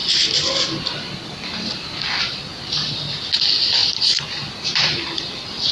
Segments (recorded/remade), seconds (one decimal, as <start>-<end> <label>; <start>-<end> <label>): 0.0-2.2 remade; 2.2-3.8 recorded; 3.8-5.7 remade